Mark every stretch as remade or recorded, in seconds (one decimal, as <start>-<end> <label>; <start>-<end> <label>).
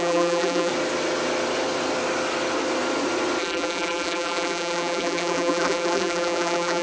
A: 0.0-0.7 remade; 0.7-3.4 recorded; 3.4-6.8 remade